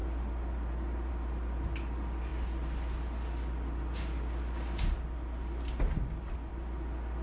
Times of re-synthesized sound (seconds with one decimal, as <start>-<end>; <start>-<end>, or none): none